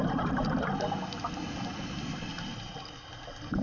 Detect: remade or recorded recorded